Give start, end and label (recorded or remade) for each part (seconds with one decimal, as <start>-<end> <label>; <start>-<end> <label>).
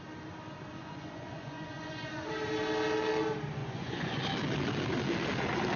0.0-0.7 recorded; 0.7-2.3 remade; 2.3-3.6 recorded; 3.6-4.2 remade; 4.2-5.8 recorded